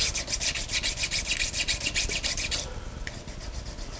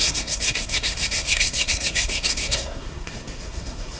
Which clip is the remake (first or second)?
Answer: second